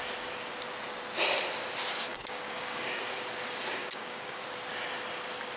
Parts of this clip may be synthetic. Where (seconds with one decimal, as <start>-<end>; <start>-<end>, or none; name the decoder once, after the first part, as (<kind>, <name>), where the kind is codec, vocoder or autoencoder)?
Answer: 2.1-3.0 (codec, DAC); 3.8-4.4